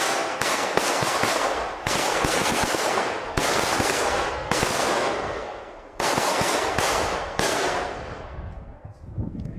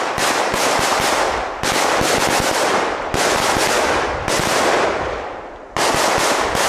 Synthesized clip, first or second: first